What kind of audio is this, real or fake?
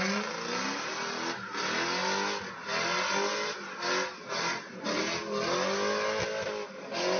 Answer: real